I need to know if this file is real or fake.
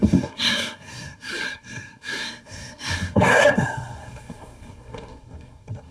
fake